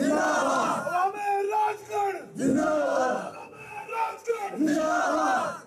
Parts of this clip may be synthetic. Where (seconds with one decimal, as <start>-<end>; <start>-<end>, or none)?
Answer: 2.5-5.0